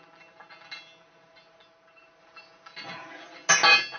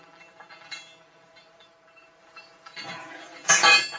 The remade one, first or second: second